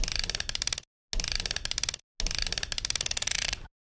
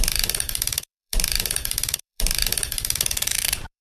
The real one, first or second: first